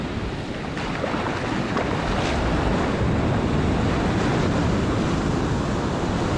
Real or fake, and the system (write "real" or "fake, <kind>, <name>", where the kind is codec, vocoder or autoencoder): real